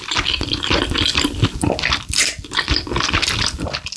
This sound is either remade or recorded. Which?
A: recorded